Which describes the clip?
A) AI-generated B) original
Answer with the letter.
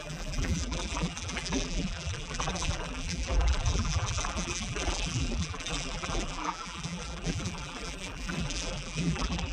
A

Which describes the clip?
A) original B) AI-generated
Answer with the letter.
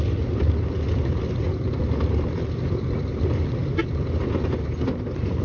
B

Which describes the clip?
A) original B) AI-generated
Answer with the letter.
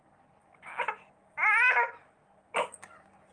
A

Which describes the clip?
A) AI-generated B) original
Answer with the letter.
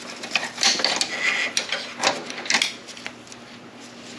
B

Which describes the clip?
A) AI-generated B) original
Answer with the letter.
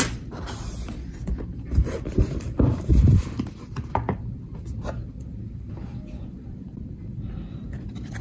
A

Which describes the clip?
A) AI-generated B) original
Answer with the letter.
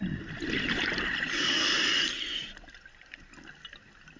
B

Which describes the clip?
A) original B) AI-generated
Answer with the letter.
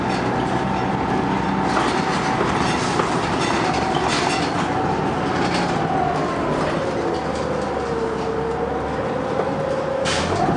A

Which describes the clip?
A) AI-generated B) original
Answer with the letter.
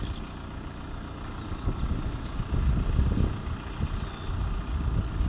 B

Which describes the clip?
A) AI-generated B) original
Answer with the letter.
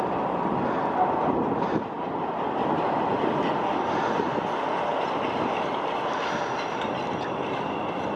B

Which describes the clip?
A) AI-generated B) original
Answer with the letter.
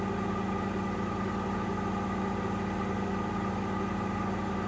B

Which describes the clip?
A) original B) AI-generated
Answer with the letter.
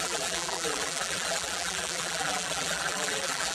B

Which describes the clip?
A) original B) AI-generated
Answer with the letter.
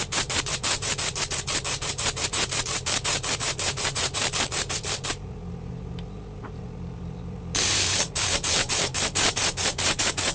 B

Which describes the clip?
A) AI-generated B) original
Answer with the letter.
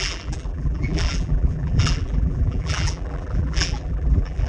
A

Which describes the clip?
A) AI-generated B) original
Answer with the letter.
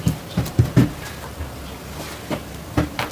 B